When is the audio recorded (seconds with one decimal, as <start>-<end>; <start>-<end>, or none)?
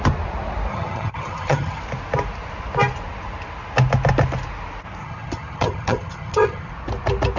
0.0-0.7; 1.8-5.0; 6.7-7.4